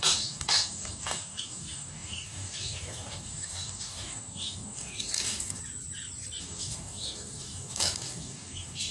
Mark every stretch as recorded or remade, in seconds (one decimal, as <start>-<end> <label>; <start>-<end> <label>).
0.0-5.6 remade; 5.6-6.4 recorded; 6.4-8.9 remade